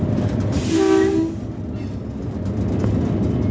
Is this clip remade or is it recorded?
recorded